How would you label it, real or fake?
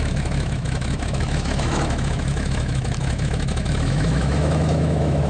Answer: fake